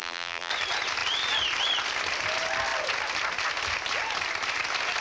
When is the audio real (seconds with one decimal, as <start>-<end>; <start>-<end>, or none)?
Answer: 0.5-5.0